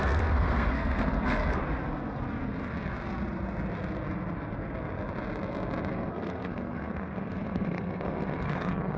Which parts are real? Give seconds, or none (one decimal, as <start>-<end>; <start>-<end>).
1.6-5.9